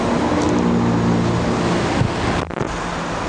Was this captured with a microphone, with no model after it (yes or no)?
yes